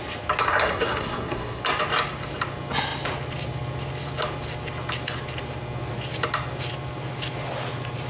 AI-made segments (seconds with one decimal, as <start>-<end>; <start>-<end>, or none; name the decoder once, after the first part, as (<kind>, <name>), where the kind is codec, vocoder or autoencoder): 0.4-1.6 (codec, SNAC)